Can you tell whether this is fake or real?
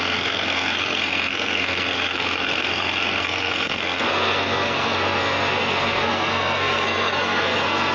fake